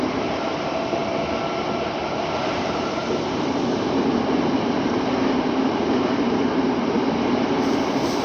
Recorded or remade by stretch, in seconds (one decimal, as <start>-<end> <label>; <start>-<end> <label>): 0.0-1.0 remade; 1.0-2.4 recorded; 2.4-8.2 remade